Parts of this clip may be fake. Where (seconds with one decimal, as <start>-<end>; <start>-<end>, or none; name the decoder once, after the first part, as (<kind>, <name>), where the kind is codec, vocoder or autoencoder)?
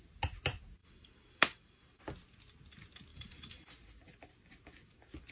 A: 0.8-2.0 (vocoder, BigVGAN v2); 3.1-3.7